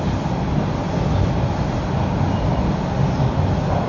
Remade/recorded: recorded